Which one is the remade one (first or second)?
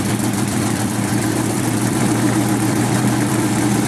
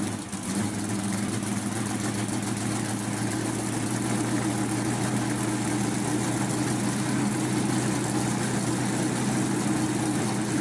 first